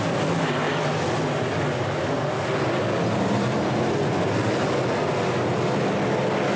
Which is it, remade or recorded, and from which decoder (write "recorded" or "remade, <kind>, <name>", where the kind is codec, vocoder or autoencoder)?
recorded